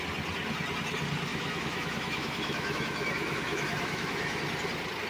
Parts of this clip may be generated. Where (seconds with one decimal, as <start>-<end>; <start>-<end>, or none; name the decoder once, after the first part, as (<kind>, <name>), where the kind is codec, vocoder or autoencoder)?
1.3-4.4 (autoencoder, DAC-VAE)